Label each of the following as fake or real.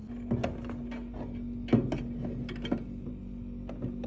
real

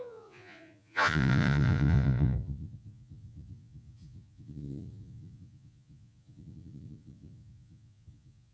fake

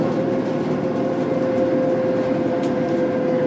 real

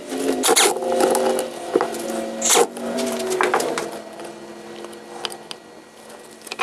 real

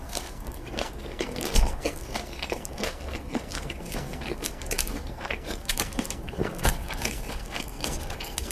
fake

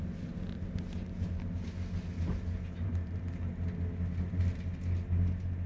real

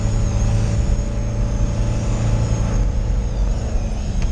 real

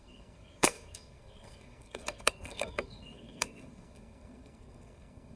fake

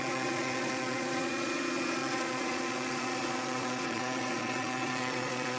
fake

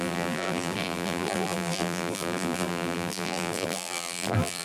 fake